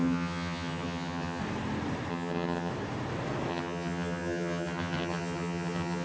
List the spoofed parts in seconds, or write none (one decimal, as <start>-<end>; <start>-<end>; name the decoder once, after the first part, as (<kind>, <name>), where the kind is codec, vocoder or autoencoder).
0.0-1.4 (vocoder, HiFi-GAN); 2.1-2.7; 3.5-6.0